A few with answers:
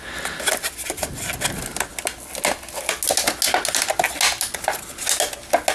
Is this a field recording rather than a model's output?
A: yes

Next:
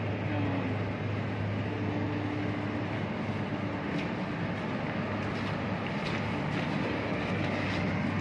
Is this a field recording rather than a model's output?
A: yes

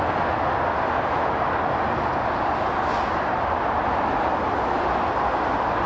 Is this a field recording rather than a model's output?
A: yes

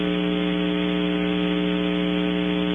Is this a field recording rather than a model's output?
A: yes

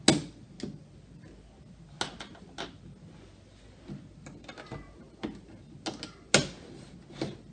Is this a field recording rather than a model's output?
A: yes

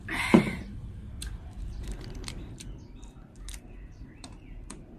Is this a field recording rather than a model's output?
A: no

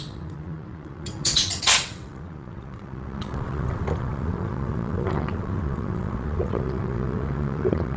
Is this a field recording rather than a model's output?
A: no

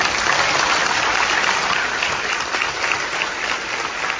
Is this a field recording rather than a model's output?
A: yes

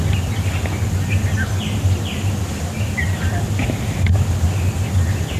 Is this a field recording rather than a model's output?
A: yes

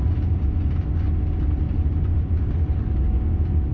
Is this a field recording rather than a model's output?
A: yes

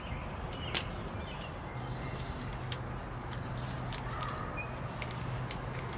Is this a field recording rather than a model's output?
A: yes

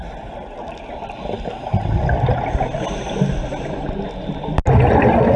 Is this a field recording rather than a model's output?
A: yes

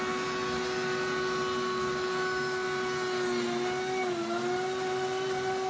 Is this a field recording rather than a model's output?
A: yes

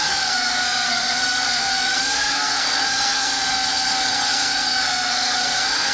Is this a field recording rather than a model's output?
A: no